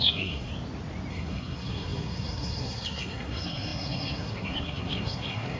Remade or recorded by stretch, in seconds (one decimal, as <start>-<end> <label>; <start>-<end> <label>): 0.0-0.5 remade; 0.5-1.1 recorded; 1.1-5.6 remade